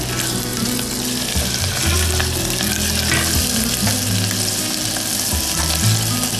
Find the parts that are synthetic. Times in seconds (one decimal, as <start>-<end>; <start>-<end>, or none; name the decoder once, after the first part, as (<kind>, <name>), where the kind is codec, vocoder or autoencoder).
none

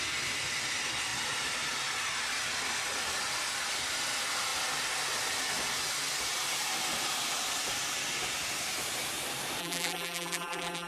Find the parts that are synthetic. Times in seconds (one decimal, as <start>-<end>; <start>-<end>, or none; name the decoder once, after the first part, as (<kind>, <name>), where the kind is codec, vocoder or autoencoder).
9.6-10.9 (vocoder, BigVGAN v2)

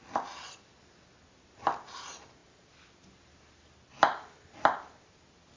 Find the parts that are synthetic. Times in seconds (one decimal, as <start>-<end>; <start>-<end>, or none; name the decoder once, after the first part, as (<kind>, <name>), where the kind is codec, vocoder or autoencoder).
none

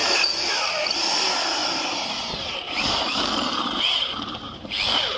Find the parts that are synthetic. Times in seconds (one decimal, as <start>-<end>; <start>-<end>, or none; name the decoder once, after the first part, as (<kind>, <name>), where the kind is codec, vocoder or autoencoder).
0.0-1.0 (vocoder, BigVGAN v2); 1.6-4.7

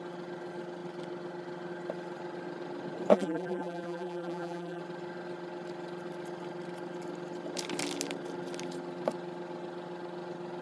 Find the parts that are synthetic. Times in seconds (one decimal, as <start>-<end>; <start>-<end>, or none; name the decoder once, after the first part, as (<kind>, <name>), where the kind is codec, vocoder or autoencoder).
3.1-4.8 (vocoder, BigVGAN v2)